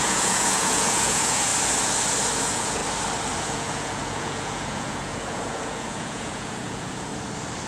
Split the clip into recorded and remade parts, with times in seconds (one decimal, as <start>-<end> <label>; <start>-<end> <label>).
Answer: 0.0-1.5 remade; 1.5-2.4 recorded; 2.4-2.8 remade; 2.8-3.4 recorded; 3.4-7.1 remade; 7.1-7.7 recorded